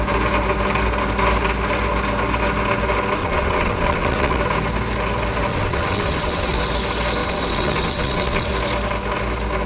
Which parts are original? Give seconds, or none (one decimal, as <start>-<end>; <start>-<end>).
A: 0.0-3.2; 4.4-5.5; 6.6-7.2; 8.5-9.7